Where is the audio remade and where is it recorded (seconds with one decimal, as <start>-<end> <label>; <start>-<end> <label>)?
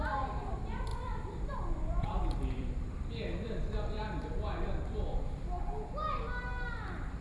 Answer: 0.0-0.9 recorded; 0.9-5.2 remade; 5.2-7.2 recorded